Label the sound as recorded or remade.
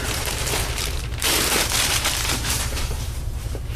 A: remade